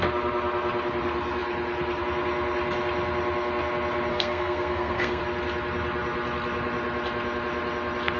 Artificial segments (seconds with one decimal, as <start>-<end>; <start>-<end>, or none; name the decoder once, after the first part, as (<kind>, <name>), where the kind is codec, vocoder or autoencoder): 4.1-5.2 (codec, SNAC)